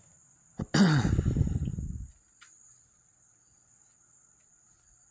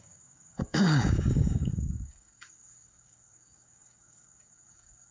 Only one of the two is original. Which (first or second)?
first